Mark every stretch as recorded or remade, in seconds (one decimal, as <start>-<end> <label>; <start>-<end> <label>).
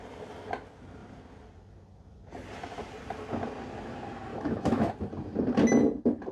0.0-4.3 recorded; 4.3-4.9 remade; 4.9-6.3 recorded